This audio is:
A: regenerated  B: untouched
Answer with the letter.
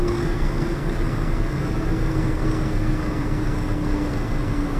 A